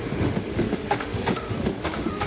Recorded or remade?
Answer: remade